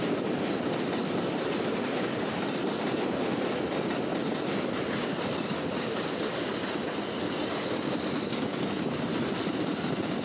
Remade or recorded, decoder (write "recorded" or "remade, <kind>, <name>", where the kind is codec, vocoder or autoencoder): recorded